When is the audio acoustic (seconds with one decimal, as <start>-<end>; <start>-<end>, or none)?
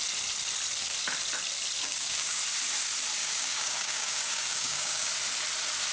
0.0-1.8; 2.4-3.2; 5.1-5.9